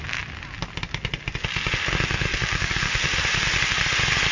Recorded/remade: recorded